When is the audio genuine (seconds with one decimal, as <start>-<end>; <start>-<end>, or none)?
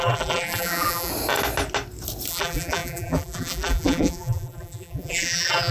1.1-2.3